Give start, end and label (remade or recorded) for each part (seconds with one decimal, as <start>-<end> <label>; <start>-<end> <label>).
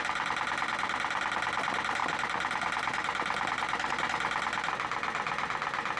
0.0-6.0 recorded